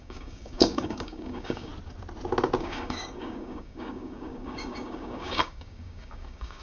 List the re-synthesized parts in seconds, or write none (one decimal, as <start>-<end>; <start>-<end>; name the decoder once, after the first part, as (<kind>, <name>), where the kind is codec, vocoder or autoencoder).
0.0-1.7 (codec, DAC); 2.6-6.6